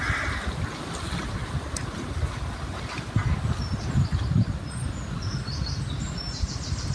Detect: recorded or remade recorded